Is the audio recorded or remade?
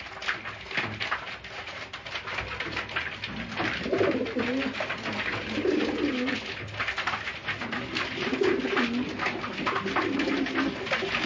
recorded